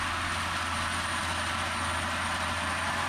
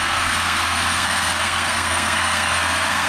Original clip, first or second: first